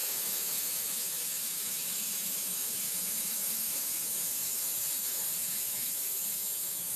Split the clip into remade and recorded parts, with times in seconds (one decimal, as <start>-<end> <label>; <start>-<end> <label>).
0.0-7.0 remade